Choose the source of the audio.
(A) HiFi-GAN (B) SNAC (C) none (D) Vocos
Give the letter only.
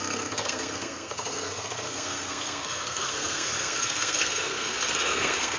B